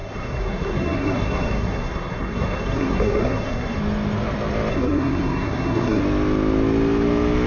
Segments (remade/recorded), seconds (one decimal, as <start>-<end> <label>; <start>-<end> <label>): 0.0-3.8 remade; 3.8-4.7 recorded; 4.7-6.0 remade; 6.0-7.5 recorded